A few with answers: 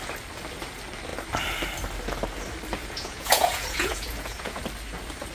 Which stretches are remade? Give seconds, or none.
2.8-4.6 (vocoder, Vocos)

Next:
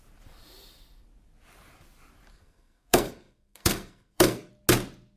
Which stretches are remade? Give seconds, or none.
2.3-4.5 (codec, SNAC)

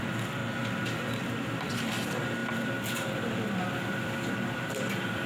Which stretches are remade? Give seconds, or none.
0.0-0.4 (vocoder, BigVGAN v2); 1.3-5.3

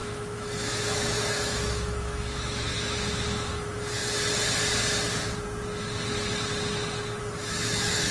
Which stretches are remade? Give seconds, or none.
0.0-4.0 (autoencoder, DAC-VAE); 7.2-8.1

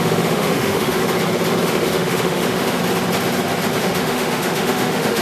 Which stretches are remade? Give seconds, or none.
0.0-1.0 (autoencoder, DAC-VAE); 1.6-2.8; 3.8-5.2

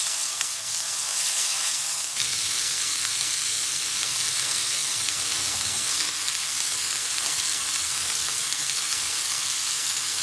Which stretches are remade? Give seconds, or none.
0.0-10.2 (codec, SNAC)

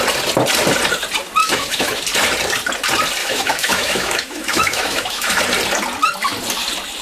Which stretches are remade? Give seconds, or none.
1.4-2.0 (autoencoder, DAC-VAE); 3.2-5.4

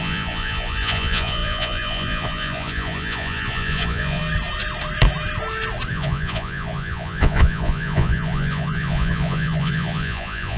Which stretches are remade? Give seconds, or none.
0.0-4.2 (vocoder, Vocos); 5.9-10.6